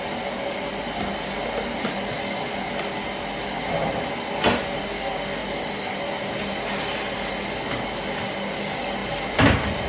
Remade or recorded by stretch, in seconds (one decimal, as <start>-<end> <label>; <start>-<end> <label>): 0.0-5.4 recorded; 5.4-6.3 remade; 6.3-9.0 recorded; 9.0-9.9 remade